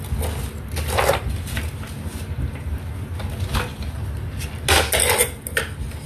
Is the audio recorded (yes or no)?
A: yes